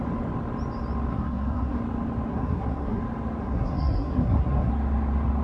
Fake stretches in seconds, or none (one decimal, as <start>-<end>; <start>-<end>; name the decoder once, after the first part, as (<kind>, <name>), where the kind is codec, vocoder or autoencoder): 1.1-1.8 (codec, SNAC); 2.3-3.0; 3.4-4.7